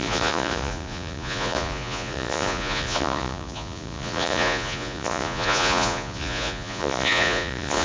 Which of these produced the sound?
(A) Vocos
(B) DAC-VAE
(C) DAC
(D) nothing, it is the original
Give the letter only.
A